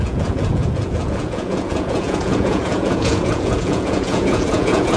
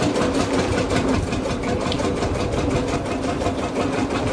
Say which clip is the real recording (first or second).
second